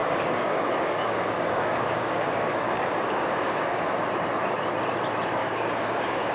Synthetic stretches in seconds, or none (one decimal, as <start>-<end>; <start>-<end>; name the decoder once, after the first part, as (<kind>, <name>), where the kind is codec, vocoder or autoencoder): 0.0-3.8 (codec, DAC); 5.4-6.3